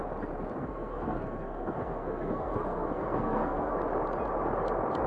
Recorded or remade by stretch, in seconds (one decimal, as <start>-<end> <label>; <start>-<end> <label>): 0.0-0.6 recorded; 0.6-3.7 remade; 3.7-5.1 recorded